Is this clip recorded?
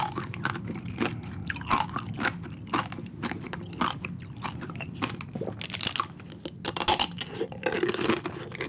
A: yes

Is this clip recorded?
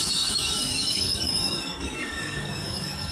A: no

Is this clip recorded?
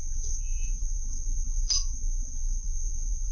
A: no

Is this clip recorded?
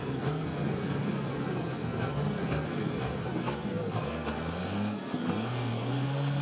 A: no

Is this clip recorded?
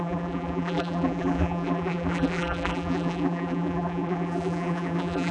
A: no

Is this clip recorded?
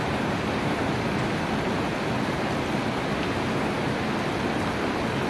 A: yes